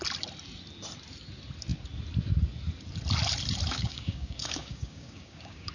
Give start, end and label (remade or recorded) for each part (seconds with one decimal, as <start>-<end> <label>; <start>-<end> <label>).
0.0-3.7 recorded; 3.7-5.7 remade

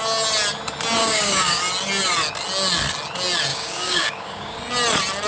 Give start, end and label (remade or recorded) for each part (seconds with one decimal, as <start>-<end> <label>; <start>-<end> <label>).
0.0-1.0 recorded; 1.0-1.6 remade; 1.6-3.5 recorded; 3.5-4.6 remade; 4.6-5.3 recorded

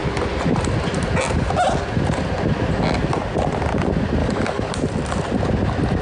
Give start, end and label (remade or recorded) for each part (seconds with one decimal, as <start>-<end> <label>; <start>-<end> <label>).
0.0-4.2 recorded; 4.2-4.7 remade; 4.7-6.0 recorded

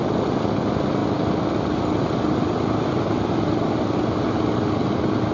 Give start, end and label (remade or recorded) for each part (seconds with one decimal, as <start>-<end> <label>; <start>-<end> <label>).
0.0-5.3 recorded

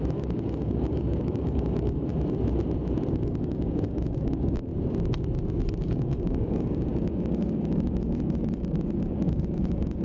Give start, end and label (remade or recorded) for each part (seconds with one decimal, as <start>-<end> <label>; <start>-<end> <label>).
0.0-2.1 remade; 2.1-3.1 recorded; 3.1-4.7 remade; 4.7-5.8 recorded; 5.8-10.0 remade

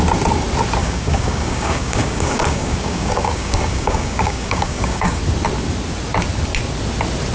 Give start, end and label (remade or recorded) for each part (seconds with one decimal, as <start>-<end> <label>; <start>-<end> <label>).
0.0-0.8 recorded; 0.8-5.2 remade; 5.2-7.3 recorded

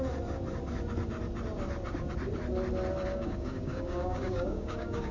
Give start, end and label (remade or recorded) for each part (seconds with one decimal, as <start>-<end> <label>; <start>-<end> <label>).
0.0-3.1 recorded; 3.1-5.1 remade